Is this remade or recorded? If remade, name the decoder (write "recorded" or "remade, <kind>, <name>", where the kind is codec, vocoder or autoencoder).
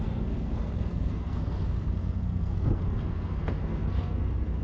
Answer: remade, codec, SNAC